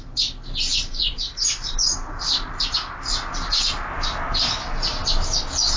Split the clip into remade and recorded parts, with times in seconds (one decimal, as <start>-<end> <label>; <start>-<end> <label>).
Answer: 0.0-0.7 recorded; 0.7-3.5 remade; 3.5-5.8 recorded